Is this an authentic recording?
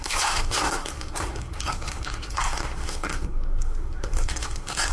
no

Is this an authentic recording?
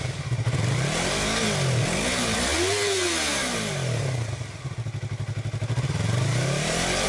yes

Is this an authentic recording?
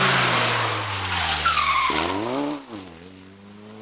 yes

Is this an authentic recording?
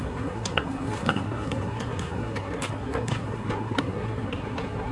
no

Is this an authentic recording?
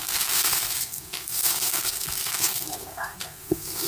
no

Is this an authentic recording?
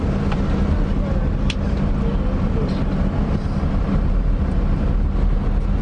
yes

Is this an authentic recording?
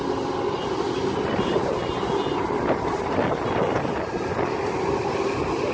yes